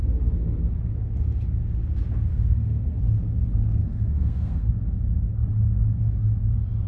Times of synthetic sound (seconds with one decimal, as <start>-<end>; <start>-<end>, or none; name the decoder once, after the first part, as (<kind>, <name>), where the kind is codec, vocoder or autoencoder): 2.3-3.0 (codec, SNAC); 3.8-4.7